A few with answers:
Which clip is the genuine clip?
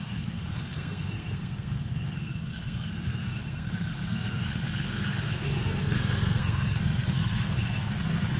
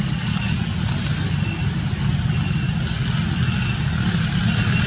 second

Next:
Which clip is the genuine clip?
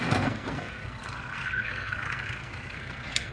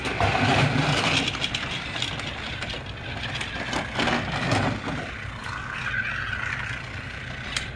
second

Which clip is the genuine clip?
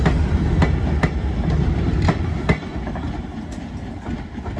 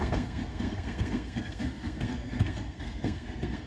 first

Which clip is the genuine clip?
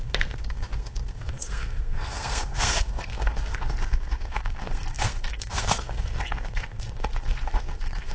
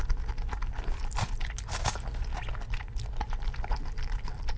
second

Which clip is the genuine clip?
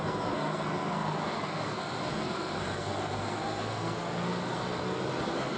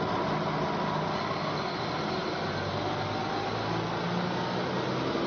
second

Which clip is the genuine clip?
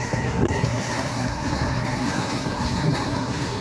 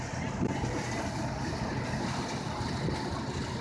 second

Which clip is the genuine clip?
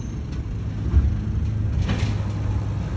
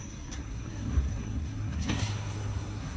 first